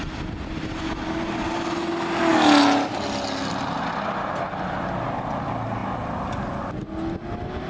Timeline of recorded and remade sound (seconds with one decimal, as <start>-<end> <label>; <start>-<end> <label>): 0.0-7.7 recorded